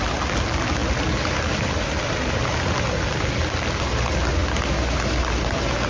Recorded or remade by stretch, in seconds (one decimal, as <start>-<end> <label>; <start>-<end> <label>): 0.0-5.9 recorded